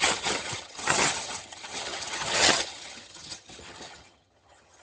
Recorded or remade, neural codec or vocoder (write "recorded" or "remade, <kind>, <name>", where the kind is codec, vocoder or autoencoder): remade, vocoder, HiFi-GAN